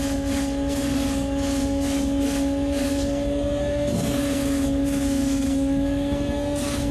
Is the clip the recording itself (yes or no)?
no